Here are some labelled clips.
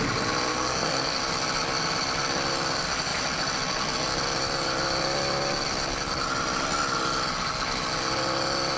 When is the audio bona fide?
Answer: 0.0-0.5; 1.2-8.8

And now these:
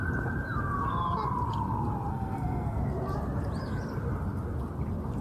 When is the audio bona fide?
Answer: 0.0-2.1; 2.8-5.2

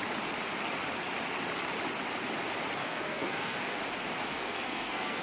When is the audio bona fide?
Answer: 0.0-2.8; 3.8-4.3

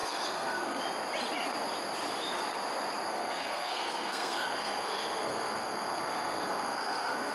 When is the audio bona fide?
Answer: 0.8-3.1

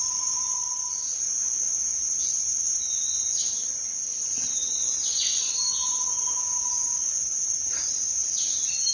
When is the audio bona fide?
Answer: 0.0-8.9